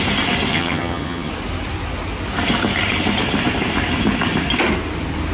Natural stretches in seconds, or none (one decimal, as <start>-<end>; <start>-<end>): 0.0-0.5; 1.3-5.3